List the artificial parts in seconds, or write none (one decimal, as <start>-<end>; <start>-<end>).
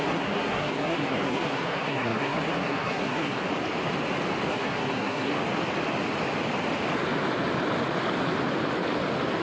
0.0-3.4; 4.5-5.3